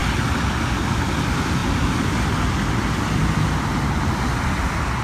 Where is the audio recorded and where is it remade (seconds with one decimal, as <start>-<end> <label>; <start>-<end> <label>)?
0.0-5.0 recorded